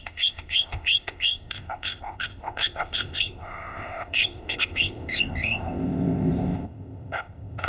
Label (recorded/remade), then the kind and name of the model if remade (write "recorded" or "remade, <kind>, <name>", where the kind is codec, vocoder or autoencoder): remade, codec, ZipCodec